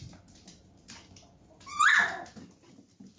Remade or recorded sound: recorded